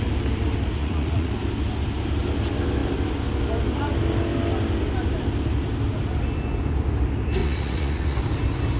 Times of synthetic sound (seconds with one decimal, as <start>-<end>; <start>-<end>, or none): 0.8-1.3; 7.4-8.2